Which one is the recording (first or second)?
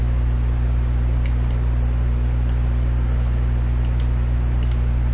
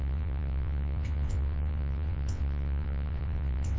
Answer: first